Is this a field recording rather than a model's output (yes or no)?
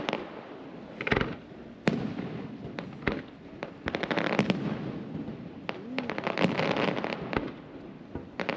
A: yes